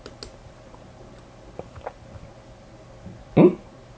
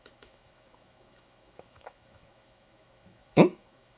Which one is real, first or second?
first